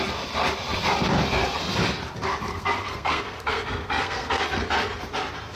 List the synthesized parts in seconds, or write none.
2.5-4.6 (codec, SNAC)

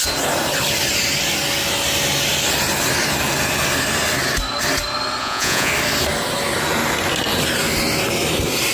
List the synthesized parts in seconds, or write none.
5.2-5.7 (vocoder, Vocos)

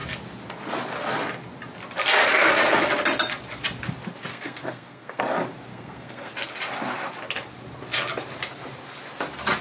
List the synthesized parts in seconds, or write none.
4.3-5.2 (codec, SNAC); 5.7-6.3

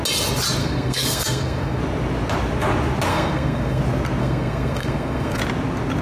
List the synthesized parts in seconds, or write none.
0.6-1.8 (codec, SNAC); 3.1-3.8; 4.2-5.4

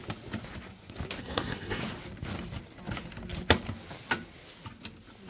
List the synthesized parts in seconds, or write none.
1.2-1.8 (codec, SNAC)